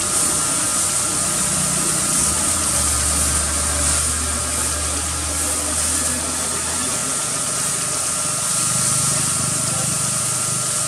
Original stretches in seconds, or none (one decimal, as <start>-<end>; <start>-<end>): 0.0-10.9